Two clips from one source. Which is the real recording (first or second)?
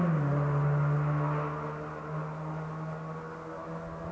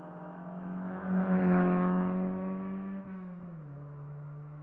first